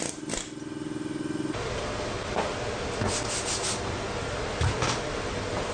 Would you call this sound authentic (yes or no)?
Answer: yes